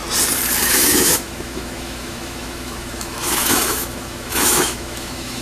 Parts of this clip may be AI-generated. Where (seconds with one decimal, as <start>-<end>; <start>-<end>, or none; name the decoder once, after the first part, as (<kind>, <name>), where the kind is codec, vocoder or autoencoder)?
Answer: 0.7-5.4 (autoencoder, DAC-VAE)